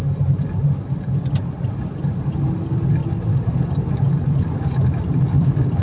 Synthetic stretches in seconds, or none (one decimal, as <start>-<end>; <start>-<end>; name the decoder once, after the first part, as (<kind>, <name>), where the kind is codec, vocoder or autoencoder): none